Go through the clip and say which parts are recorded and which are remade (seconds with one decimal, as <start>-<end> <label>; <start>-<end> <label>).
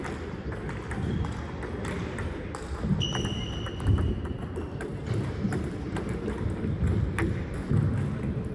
0.0-8.5 recorded